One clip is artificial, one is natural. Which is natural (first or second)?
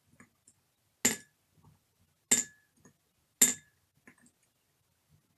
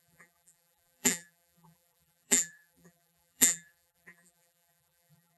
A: first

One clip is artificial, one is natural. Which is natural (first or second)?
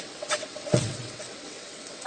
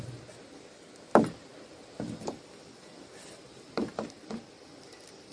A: second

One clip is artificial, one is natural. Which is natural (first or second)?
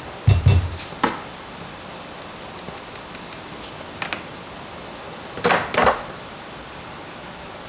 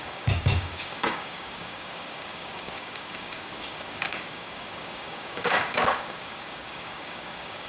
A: first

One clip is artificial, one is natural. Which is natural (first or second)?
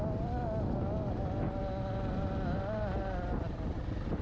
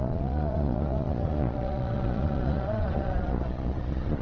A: first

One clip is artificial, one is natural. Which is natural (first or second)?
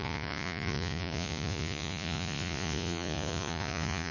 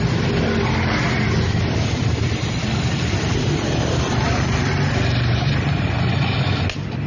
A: second